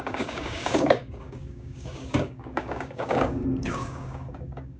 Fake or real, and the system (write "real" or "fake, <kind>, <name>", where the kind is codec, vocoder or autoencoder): fake, codec, DAC